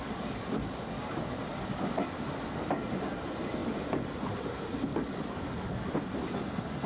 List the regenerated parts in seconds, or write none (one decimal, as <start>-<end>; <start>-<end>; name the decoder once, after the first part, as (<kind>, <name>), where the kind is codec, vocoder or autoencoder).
4.9-5.5 (codec, DAC)